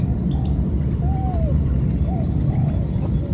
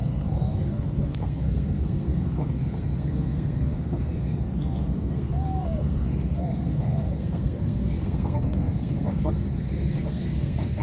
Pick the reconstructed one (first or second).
second